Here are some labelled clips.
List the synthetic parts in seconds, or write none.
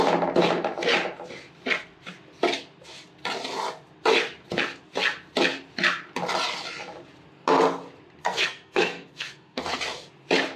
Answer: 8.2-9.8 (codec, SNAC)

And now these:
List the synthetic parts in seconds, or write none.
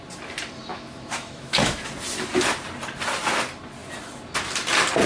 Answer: 0.7-1.9 (autoencoder, DAC-VAE)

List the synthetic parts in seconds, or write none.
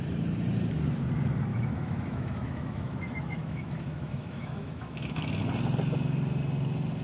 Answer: 1.5-5.4 (autoencoder, DAC-VAE)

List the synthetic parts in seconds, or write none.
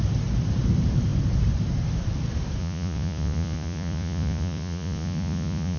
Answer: 2.6-5.8 (vocoder, Vocos)